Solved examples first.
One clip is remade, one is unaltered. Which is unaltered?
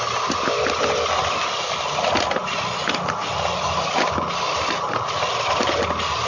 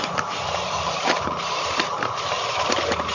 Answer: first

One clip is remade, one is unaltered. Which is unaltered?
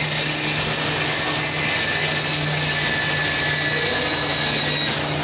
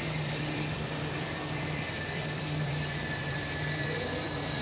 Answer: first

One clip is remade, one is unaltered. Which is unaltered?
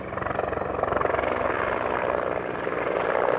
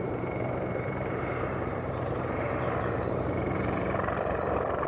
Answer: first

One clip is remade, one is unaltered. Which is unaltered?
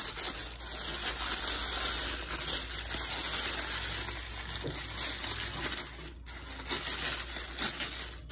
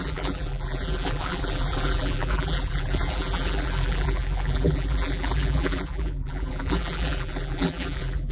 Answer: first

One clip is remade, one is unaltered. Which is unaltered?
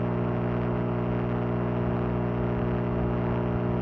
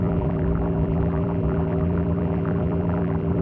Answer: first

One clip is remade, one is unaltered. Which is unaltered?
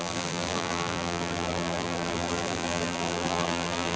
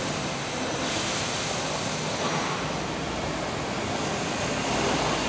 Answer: second